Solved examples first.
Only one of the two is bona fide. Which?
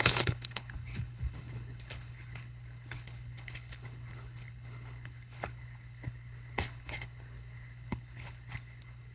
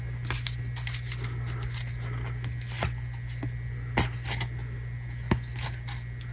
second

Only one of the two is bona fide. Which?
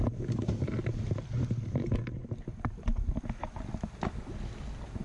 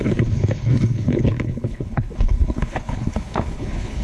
first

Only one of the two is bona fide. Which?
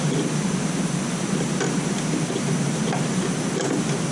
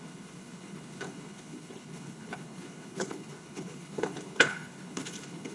first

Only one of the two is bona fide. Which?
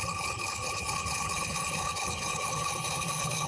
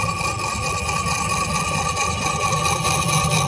second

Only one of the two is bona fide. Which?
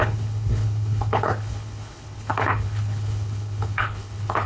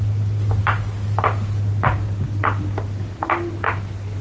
second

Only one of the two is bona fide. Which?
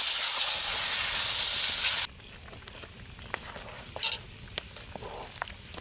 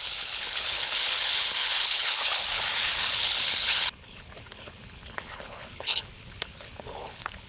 first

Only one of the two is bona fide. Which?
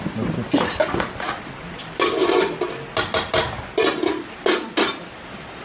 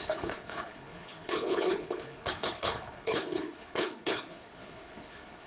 first